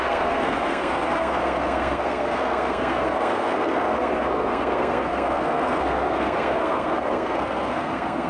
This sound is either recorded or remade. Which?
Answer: remade